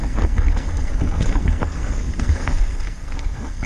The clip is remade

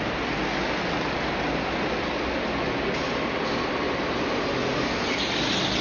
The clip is recorded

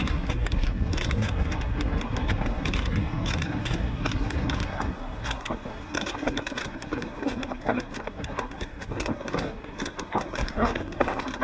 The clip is remade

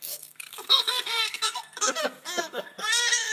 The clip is remade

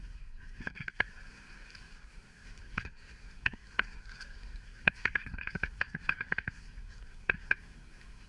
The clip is remade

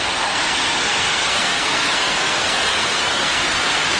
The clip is remade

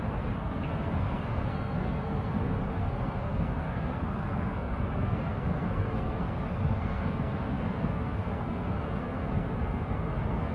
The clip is remade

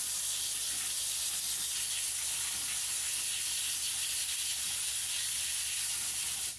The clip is recorded